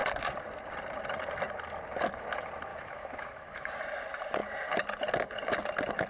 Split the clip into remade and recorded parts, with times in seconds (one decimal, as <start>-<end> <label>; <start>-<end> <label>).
0.0-2.7 recorded; 2.7-3.8 remade; 3.8-6.1 recorded